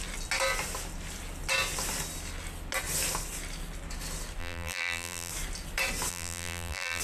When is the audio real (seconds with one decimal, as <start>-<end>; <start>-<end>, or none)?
0.0-4.4; 5.3-6.1